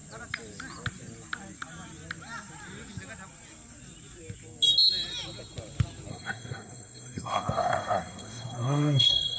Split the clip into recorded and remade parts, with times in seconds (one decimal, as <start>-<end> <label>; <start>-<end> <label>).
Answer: 0.0-6.1 recorded; 6.1-9.4 remade